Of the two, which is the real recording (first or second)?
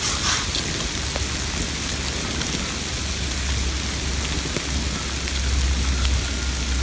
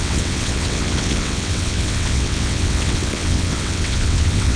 first